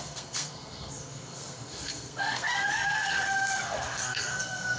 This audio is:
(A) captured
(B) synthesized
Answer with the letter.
B